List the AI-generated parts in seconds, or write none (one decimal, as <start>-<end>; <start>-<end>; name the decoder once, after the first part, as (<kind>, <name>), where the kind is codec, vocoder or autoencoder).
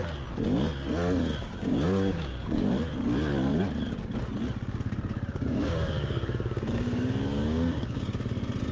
1.4-2.7 (codec, DAC); 5.3-8.2